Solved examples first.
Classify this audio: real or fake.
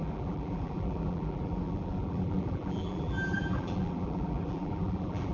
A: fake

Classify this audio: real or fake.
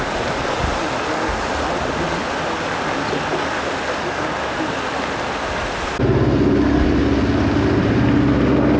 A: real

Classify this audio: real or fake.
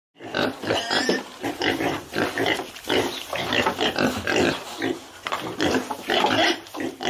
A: fake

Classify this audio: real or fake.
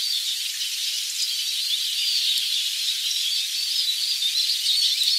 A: real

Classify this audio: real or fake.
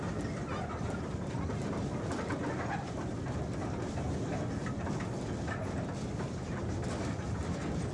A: real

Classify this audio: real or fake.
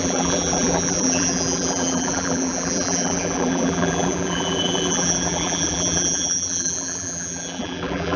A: fake